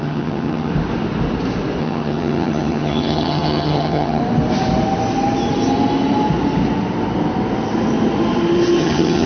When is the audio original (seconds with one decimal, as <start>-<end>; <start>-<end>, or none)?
0.7-1.8; 4.2-8.8